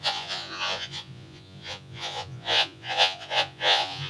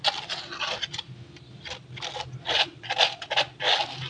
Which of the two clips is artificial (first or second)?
first